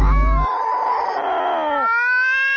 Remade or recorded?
recorded